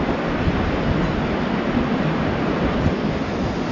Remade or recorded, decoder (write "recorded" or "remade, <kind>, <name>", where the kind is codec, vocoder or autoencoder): recorded